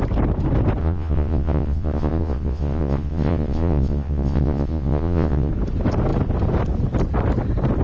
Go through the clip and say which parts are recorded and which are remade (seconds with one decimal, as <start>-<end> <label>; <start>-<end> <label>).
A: 0.0-0.8 recorded; 0.8-5.5 remade; 5.5-7.8 recorded